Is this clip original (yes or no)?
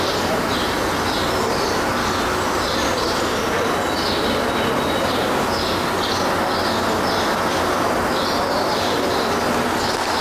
yes